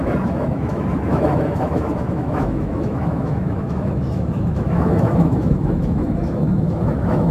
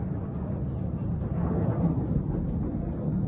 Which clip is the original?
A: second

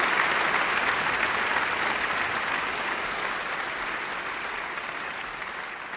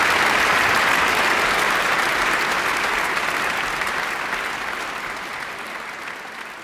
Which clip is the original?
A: second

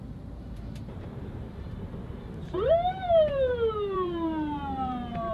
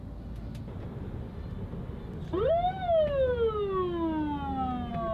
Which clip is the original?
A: second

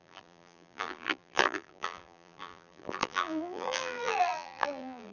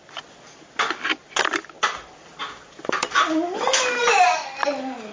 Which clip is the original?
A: second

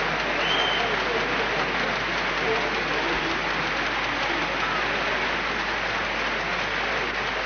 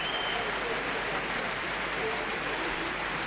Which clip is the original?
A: first